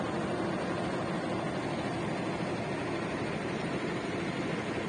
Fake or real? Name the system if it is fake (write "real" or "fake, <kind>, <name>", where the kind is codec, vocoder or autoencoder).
real